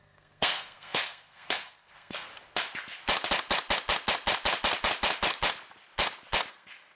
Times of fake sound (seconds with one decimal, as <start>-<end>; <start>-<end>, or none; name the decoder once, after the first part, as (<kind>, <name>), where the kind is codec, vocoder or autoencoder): 0.0-2.3 (codec, SNAC); 6.5-7.0